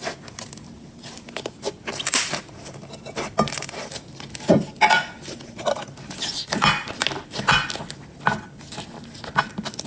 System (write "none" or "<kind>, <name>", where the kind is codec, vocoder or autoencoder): none